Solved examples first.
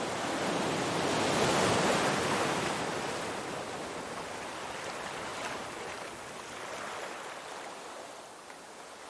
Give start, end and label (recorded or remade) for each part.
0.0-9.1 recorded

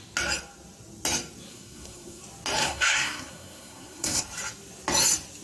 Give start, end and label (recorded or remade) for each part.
0.0-1.5 recorded; 1.5-2.2 remade; 2.2-2.6 recorded; 2.6-4.2 remade; 4.2-5.4 recorded

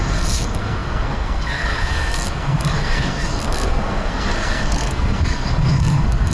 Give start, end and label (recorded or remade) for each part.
0.0-6.3 remade